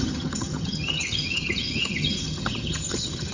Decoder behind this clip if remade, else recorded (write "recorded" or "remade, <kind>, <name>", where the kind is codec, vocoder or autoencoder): remade, vocoder, HiFi-GAN